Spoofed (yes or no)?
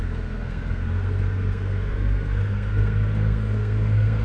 yes